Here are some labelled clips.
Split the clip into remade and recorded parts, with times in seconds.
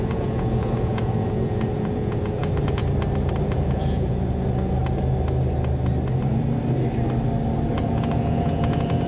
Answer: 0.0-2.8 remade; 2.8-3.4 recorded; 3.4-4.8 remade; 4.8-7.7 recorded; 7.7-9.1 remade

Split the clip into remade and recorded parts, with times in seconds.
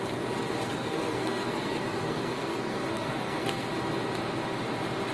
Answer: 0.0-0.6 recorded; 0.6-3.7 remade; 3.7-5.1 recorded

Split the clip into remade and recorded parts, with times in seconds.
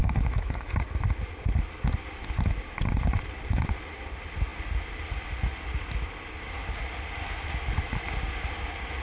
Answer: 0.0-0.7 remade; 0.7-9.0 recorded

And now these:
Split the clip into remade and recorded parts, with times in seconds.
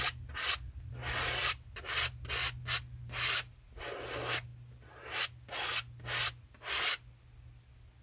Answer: 0.0-8.0 recorded